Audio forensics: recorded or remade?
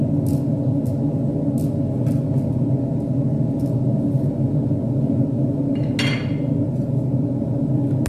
recorded